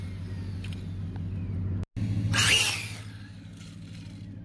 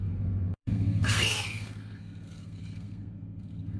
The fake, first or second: second